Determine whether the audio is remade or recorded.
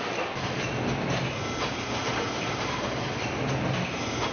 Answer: recorded